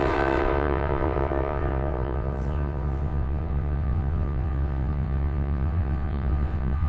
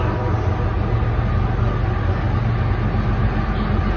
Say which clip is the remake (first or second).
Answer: first